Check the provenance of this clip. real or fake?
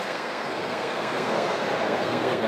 fake